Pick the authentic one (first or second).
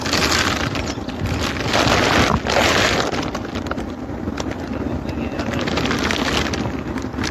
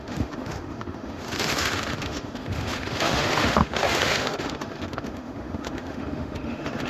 first